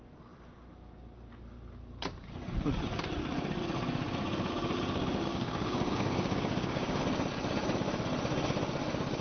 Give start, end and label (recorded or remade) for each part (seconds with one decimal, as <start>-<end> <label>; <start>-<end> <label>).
0.0-5.3 recorded; 5.3-7.0 remade; 7.0-9.2 recorded